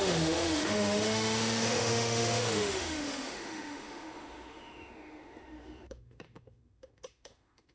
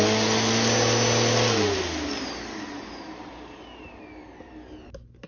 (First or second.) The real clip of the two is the second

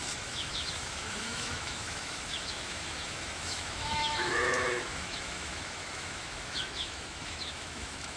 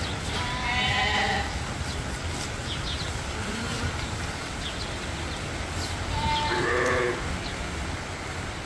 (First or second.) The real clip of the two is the second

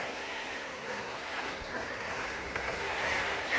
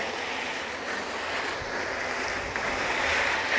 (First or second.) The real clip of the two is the second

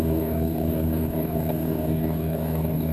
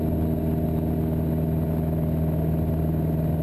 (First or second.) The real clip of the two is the second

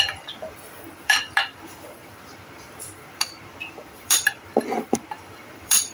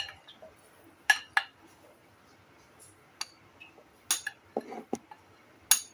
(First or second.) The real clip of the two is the second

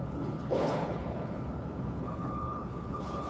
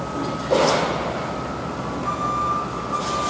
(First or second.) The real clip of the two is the second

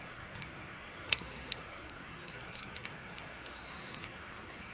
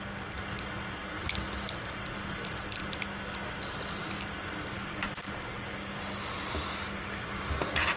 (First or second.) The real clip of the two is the second